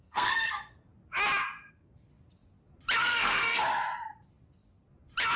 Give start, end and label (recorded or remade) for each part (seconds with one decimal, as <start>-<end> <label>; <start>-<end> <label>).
0.0-0.8 remade; 0.8-1.7 recorded; 1.7-2.1 remade; 2.1-3.0 recorded; 3.0-3.6 remade; 3.6-5.4 recorded